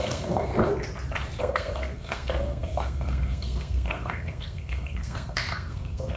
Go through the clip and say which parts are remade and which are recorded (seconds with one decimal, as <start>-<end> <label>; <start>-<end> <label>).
0.0-0.5 remade; 0.5-1.4 recorded; 1.4-6.2 remade